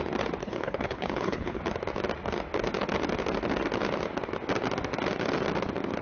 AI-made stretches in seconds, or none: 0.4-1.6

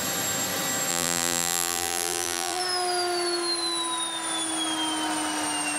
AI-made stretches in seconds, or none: 0.9-2.6

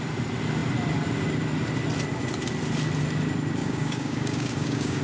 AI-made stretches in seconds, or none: 3.6-5.0